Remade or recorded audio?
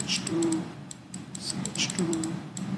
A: remade